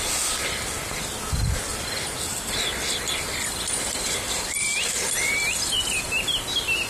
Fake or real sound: real